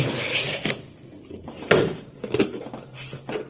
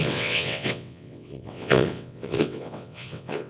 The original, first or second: first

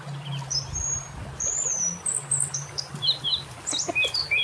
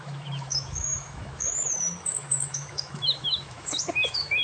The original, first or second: first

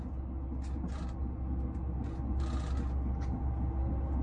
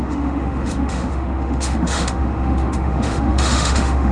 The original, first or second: first